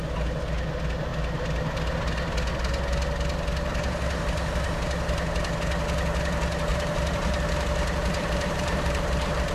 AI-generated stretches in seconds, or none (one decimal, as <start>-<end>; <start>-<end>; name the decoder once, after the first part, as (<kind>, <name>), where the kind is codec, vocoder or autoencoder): 6.7-9.5 (vocoder, BigVGAN v2)